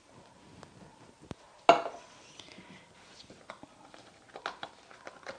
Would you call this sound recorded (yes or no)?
yes